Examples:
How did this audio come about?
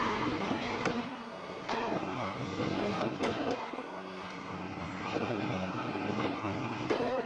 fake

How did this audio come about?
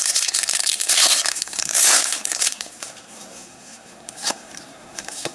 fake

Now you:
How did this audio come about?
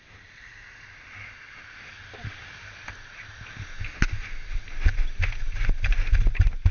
real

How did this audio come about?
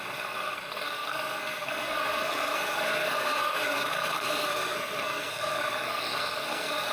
fake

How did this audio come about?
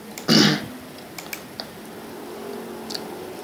real